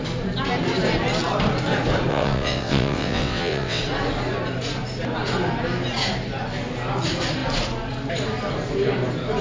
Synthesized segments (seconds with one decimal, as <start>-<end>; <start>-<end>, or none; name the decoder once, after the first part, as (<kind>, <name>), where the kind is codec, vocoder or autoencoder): 2.1-3.8 (vocoder, WaveNeXt)